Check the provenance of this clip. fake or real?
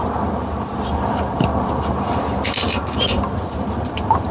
fake